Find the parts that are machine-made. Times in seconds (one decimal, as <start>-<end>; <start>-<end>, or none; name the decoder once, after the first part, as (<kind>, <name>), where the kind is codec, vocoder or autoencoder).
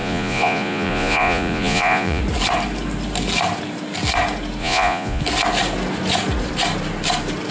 0.0-2.2 (vocoder, Vocos); 4.6-5.2